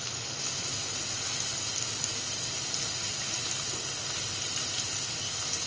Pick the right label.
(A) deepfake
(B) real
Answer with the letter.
B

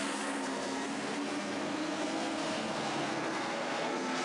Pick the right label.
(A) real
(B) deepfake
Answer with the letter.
B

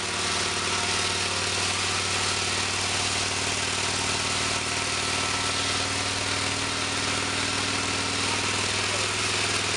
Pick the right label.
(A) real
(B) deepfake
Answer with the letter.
A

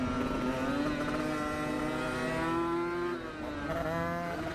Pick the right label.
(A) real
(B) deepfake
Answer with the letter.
A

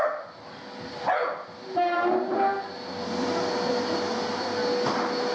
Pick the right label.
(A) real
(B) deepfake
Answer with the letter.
A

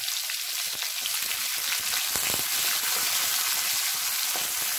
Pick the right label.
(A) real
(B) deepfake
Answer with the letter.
A